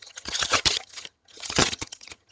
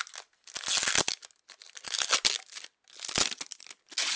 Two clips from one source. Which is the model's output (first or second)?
first